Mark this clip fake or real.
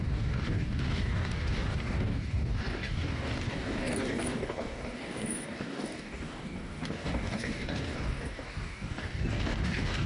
fake